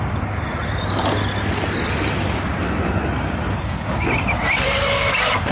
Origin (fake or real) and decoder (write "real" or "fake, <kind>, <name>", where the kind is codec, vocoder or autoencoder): real